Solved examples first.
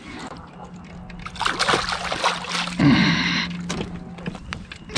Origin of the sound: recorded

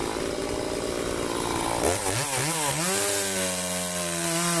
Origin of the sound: recorded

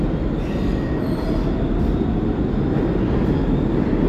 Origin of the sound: recorded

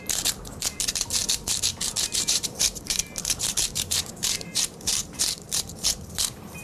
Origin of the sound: remade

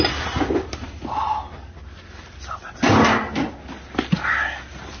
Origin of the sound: recorded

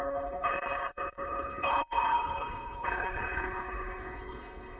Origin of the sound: remade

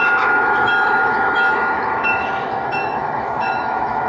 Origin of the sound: remade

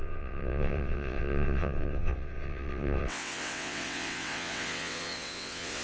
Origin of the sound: remade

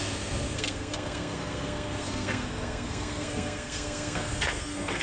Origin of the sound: remade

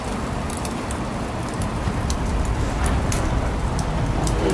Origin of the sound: remade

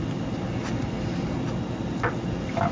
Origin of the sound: recorded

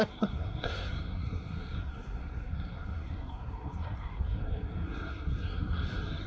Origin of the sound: remade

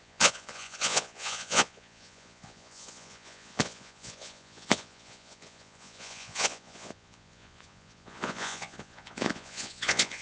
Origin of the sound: remade